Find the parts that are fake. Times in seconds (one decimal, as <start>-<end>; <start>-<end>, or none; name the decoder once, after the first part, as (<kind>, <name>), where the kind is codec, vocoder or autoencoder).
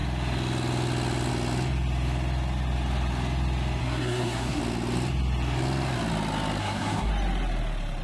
3.8-4.6 (codec, SNAC); 6.6-7.1